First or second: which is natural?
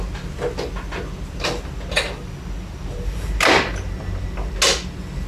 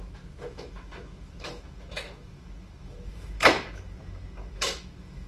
first